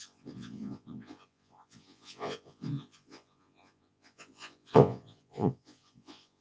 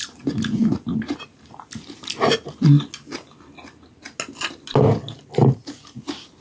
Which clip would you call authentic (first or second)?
second